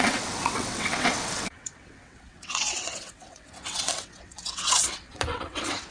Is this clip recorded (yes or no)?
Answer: no